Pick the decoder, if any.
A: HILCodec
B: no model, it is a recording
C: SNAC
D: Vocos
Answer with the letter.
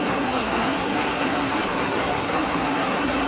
C